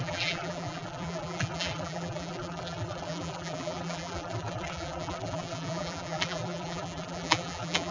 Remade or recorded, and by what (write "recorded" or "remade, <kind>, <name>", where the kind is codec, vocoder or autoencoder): remade, vocoder, BigVGAN v2